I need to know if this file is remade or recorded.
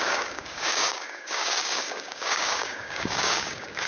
remade